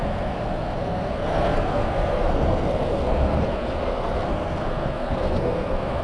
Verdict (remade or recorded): remade